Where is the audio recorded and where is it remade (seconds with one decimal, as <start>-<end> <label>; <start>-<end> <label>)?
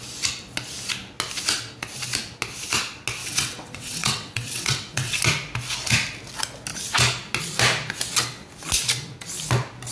0.0-3.2 recorded; 3.2-5.2 remade; 5.2-9.9 recorded